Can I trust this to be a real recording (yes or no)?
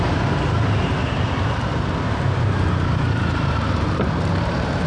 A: no